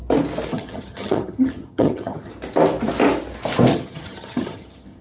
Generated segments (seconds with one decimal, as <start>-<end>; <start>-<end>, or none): 0.5-2.3; 3.7-5.0